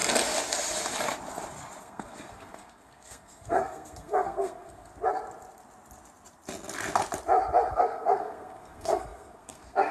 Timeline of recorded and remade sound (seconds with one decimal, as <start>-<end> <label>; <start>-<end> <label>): 0.0-1.8 recorded; 1.8-4.9 remade; 4.9-7.7 recorded; 7.7-9.9 remade